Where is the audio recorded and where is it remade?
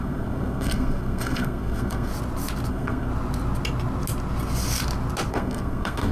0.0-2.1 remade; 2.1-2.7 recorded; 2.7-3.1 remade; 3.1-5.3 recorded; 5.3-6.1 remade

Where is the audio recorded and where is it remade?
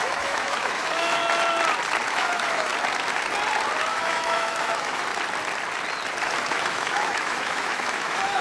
0.0-1.2 remade; 1.2-2.1 recorded; 2.1-2.7 remade; 2.7-3.9 recorded; 3.9-5.1 remade; 5.1-6.5 recorded; 6.5-8.4 remade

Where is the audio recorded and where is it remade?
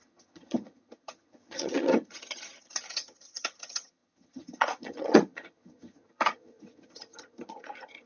0.0-8.1 remade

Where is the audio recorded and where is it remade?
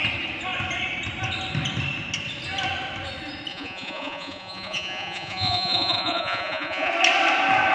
0.0-3.5 recorded; 3.5-6.9 remade; 6.9-7.7 recorded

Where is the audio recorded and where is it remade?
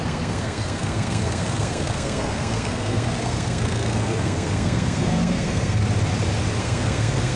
0.0-5.8 remade; 5.8-6.6 recorded; 6.6-7.4 remade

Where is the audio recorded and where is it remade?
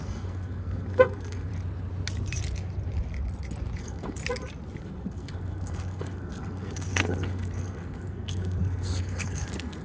0.0-1.5 remade; 1.5-3.8 recorded; 3.8-4.2 remade; 4.2-4.8 recorded; 4.8-9.8 remade